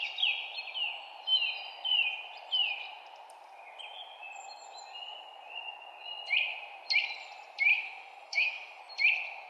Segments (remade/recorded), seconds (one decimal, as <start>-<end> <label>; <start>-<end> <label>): 0.0-7.7 recorded; 7.7-8.8 remade; 8.8-9.5 recorded